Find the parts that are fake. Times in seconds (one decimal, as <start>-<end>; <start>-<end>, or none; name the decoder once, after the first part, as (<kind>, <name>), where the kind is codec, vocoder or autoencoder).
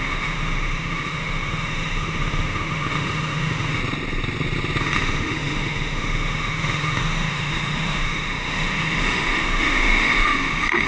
0.0-3.8 (autoencoder, DAC-VAE); 4.8-10.9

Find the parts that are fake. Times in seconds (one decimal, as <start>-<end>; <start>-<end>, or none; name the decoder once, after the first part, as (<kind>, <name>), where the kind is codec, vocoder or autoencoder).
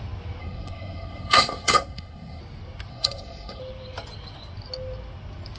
0.4-2.4 (codec, SNAC); 2.9-3.6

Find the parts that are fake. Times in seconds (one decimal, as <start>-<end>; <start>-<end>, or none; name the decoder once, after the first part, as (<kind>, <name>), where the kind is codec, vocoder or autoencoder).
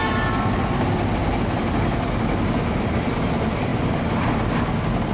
none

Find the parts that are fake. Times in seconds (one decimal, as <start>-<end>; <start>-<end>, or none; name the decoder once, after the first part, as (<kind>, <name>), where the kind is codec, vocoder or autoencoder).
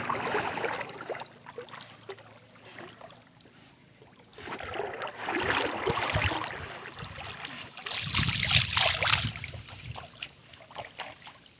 none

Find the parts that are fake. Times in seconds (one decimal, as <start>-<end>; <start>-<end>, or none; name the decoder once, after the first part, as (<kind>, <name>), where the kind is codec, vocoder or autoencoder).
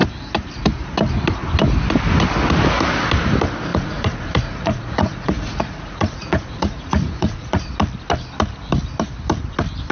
3.7-7.7 (vocoder, Vocos)